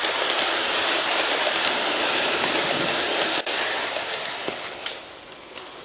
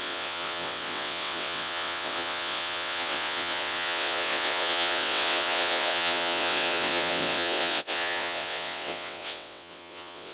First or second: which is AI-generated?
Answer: second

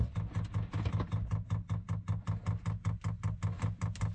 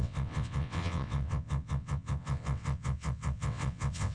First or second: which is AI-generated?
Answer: second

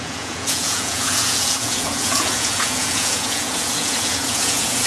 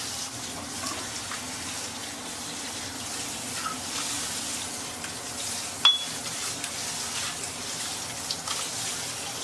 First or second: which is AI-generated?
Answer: first